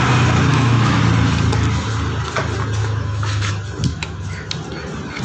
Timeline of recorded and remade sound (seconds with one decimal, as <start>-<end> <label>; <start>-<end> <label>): 0.0-0.5 recorded; 0.5-1.0 remade; 1.0-2.8 recorded; 2.8-3.5 remade; 3.5-3.9 recorded; 3.9-4.5 remade; 4.5-5.2 recorded